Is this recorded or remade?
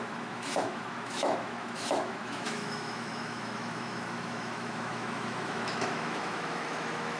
remade